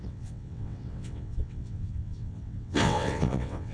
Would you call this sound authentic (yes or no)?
no